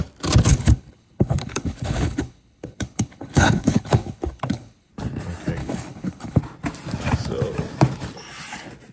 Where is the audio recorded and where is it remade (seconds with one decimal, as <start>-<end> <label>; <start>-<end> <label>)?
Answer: 0.0-0.5 recorded; 0.5-4.9 remade; 4.9-5.6 recorded; 5.6-6.4 remade; 6.4-8.9 recorded